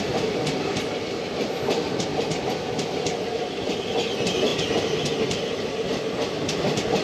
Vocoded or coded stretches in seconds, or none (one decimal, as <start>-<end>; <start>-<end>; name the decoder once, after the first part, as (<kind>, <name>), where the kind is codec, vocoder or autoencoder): 2.1-3.0 (vocoder, BigVGAN v2)